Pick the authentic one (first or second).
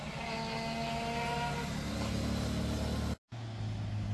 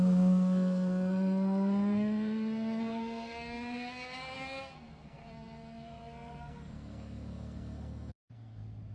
first